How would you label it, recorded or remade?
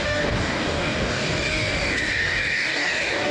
remade